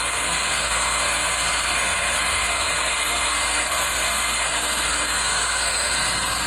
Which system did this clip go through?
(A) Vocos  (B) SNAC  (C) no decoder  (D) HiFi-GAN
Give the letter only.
B